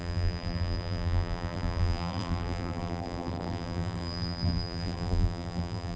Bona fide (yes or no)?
no